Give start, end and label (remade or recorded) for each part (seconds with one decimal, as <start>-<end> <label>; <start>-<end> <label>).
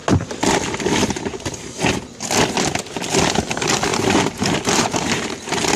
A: 0.0-3.9 recorded; 3.9-5.3 remade; 5.3-5.8 recorded